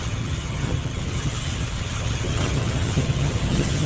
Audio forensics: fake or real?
fake